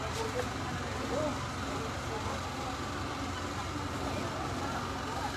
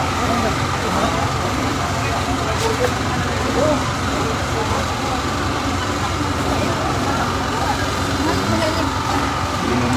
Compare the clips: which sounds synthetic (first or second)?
second